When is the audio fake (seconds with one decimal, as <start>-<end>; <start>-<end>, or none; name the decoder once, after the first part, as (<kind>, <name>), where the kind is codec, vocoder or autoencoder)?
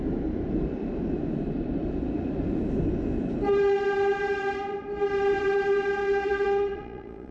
6.0-7.3 (vocoder, Vocos)